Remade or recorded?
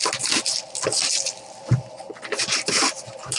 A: recorded